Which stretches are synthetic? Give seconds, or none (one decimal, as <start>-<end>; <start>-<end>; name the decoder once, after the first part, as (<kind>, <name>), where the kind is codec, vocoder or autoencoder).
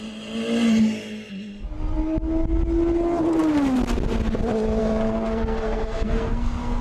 4.8-6.8 (codec, SNAC)